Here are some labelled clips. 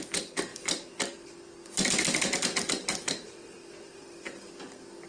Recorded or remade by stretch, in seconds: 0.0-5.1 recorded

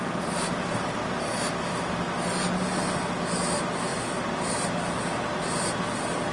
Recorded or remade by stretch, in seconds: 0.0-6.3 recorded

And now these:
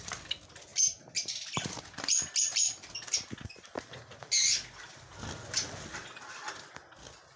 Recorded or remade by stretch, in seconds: 0.0-7.4 recorded

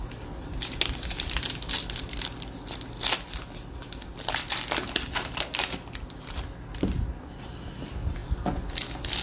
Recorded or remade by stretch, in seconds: 0.0-9.2 recorded